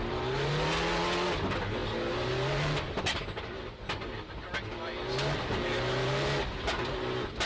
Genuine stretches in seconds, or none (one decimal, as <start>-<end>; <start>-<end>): 0.0-7.5